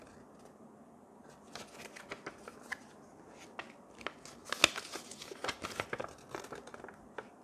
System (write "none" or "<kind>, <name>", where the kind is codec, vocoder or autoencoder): none